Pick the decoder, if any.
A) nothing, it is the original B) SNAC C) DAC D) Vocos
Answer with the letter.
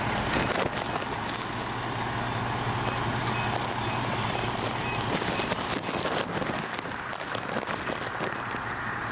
A